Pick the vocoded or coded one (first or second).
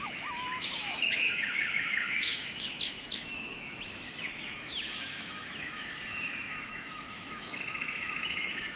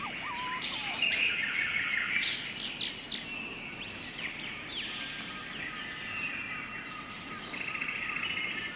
first